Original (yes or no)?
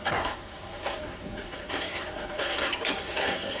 no